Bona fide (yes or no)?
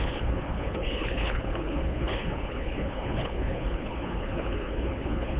no